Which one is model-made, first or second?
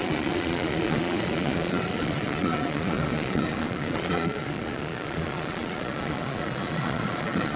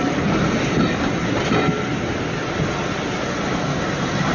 first